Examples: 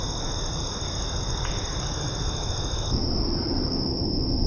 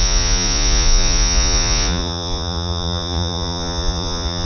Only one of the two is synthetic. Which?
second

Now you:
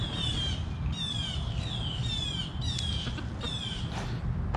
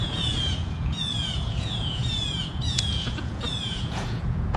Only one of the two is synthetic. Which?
second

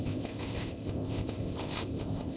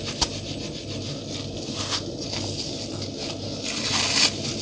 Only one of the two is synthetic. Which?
first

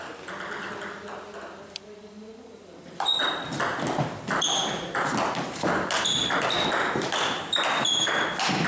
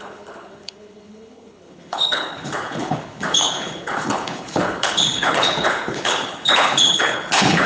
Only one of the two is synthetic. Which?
second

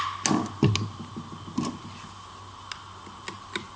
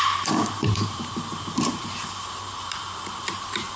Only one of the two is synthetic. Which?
second